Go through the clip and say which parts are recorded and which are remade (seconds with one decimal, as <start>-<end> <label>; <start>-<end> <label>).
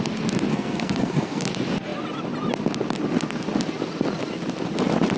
0.0-0.5 recorded; 0.5-1.5 remade; 1.5-5.2 recorded